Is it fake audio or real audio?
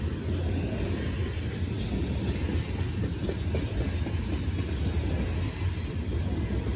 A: real